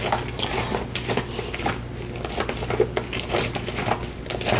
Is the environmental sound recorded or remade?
recorded